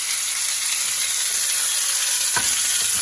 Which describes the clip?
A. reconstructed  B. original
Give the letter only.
B